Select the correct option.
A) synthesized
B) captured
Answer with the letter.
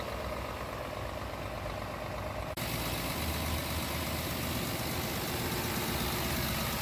B